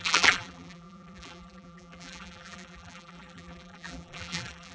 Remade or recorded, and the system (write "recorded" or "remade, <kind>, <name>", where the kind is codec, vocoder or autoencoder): remade, vocoder, BigVGAN v2